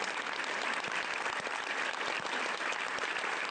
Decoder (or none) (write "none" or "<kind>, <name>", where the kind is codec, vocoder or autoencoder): vocoder, BigVGAN v2